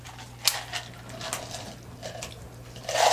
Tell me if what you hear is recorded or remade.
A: recorded